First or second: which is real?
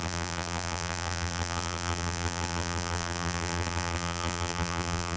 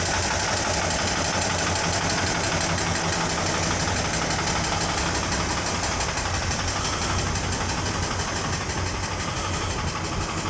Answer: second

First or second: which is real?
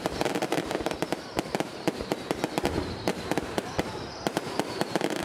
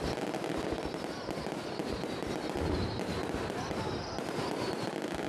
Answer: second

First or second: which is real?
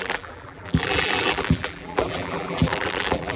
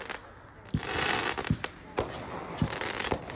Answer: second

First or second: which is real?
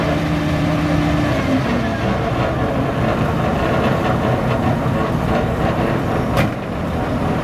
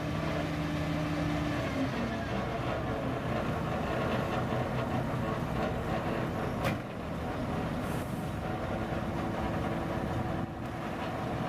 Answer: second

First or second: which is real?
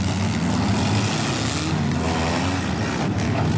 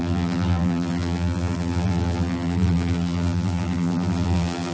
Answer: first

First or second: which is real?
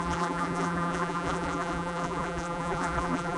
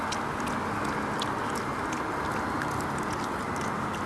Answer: second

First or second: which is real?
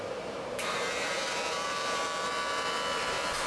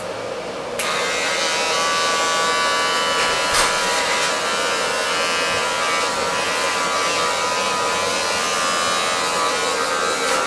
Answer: second